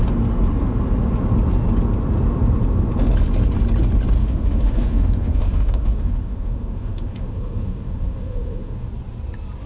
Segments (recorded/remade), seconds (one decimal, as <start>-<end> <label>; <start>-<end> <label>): 0.0-4.2 recorded; 4.2-8.9 remade; 8.9-9.7 recorded